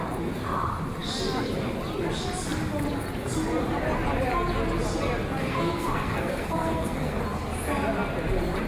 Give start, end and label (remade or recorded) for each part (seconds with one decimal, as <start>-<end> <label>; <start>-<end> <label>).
0.0-5.4 recorded; 5.4-7.2 remade; 7.2-8.7 recorded